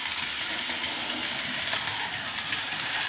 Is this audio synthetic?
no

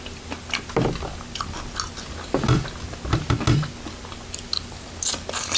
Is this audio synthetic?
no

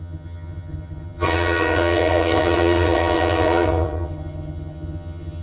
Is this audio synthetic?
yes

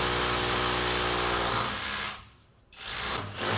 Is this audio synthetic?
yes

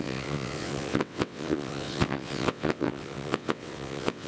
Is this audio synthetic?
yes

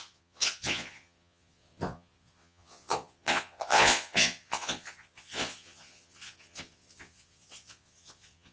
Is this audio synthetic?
yes